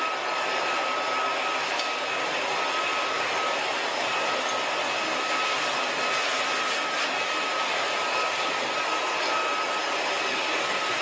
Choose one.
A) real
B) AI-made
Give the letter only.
A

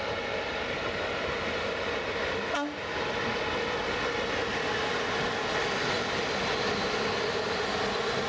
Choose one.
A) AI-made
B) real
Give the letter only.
B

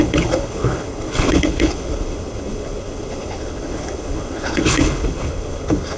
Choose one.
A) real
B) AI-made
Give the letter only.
B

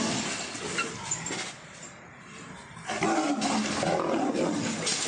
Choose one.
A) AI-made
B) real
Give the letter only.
B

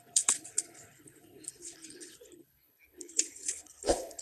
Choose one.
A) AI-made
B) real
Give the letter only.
A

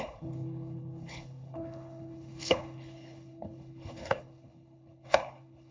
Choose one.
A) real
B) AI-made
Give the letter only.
B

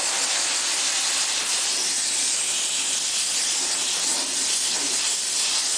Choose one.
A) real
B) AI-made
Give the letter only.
A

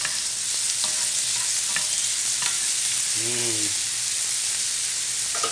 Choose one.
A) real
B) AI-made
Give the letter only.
A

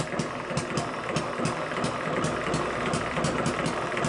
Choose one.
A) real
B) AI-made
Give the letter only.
A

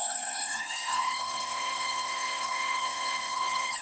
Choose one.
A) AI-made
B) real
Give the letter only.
A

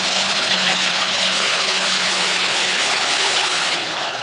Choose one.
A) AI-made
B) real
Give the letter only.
A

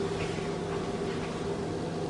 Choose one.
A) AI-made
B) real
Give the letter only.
B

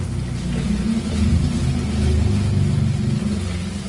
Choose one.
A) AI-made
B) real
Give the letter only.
B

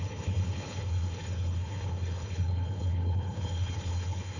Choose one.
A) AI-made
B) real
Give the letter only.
A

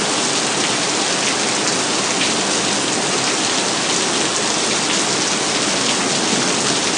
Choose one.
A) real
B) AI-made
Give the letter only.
A